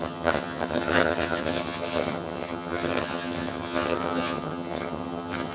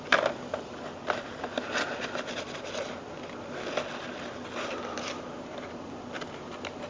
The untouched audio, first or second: second